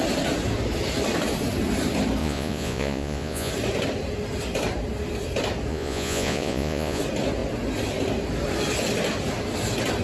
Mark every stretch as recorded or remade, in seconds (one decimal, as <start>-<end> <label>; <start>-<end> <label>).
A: 0.0-2.2 recorded; 2.2-3.5 remade; 3.5-5.7 recorded; 5.7-7.0 remade; 7.0-10.0 recorded